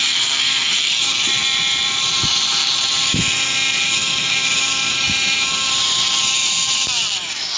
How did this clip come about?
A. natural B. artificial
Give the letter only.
B